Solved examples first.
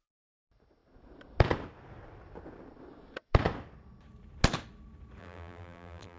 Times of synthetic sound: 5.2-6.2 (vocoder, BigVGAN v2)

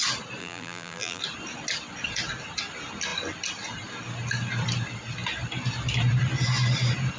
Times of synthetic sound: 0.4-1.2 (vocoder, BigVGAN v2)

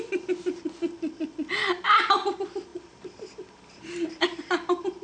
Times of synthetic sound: 0.0-0.5 (vocoder, BigVGAN v2); 2.1-5.0